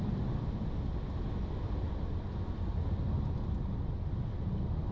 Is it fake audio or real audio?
real